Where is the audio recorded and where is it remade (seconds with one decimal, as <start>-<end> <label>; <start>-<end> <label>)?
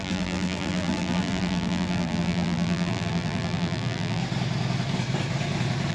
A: 0.0-4.2 remade; 4.2-5.9 recorded